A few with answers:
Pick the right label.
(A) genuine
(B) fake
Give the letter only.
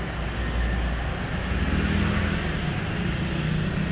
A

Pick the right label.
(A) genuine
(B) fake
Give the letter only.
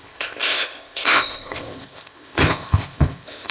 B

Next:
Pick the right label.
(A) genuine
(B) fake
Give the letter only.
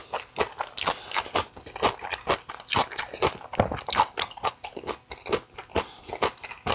A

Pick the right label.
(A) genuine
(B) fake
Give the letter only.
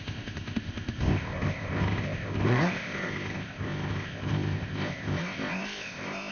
B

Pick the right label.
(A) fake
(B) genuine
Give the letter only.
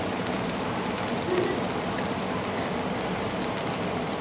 B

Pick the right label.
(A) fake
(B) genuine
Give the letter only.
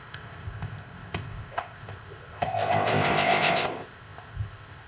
A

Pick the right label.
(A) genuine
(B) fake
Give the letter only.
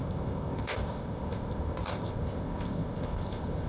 B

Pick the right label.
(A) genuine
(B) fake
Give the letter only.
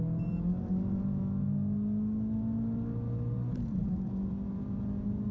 A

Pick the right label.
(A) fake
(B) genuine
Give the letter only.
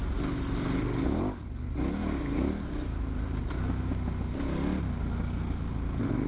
B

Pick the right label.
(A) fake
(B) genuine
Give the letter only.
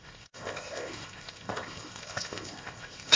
A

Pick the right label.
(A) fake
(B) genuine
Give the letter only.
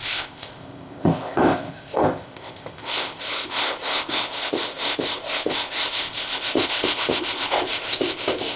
A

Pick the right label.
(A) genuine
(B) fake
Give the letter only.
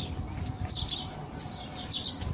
A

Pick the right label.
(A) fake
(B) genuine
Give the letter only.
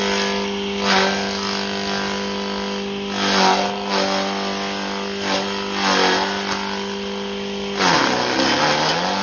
B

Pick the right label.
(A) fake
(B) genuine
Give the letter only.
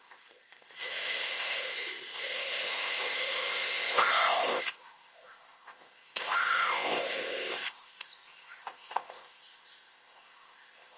A